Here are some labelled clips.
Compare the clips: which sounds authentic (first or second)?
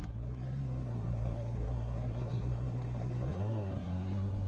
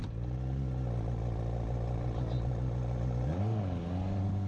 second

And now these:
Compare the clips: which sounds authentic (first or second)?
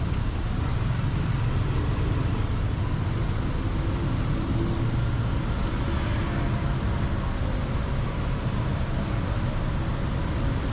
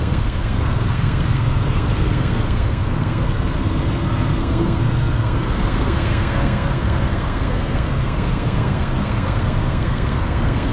first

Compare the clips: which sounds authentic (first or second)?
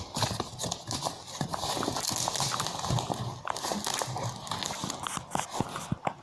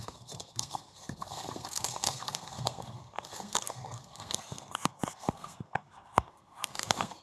first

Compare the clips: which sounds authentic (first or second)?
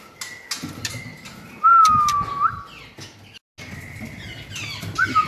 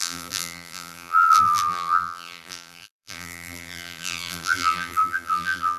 first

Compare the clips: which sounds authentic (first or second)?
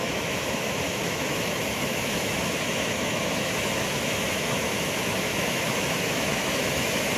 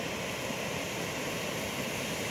second